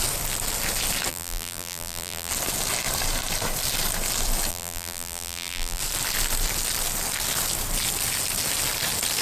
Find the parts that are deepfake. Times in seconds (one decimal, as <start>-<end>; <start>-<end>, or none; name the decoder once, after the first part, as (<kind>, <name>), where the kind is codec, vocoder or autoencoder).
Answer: 1.1-2.3 (vocoder, BigVGAN v2); 4.5-5.8